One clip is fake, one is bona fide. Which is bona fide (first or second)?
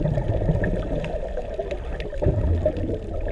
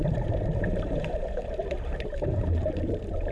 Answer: first